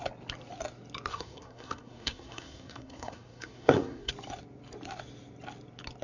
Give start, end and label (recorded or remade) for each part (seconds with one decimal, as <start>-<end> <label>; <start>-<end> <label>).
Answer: 0.0-1.1 recorded; 1.1-4.1 remade; 4.1-6.0 recorded